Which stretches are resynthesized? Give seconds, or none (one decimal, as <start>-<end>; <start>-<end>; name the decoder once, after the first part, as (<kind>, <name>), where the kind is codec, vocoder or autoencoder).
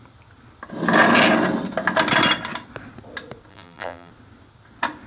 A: 3.5-4.1 (vocoder, BigVGAN v2)